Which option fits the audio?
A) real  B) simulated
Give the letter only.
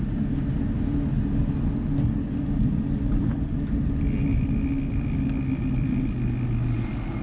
A